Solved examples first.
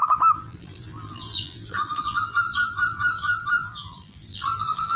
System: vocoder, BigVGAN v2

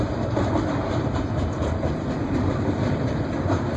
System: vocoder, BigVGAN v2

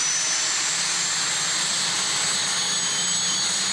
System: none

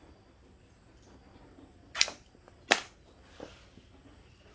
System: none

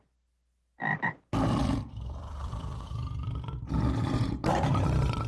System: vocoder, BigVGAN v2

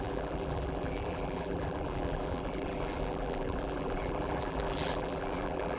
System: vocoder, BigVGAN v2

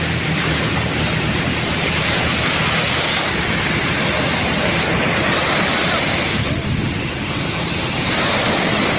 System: vocoder, BigVGAN v2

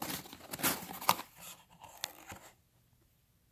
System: none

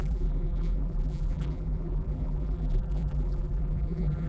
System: vocoder, BigVGAN v2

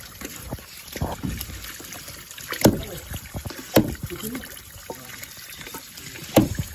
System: vocoder, BigVGAN v2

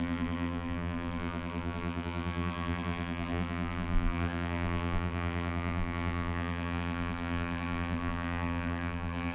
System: vocoder, BigVGAN v2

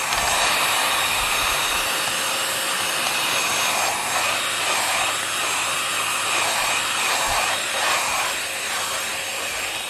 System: none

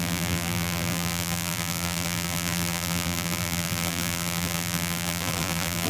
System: vocoder, BigVGAN v2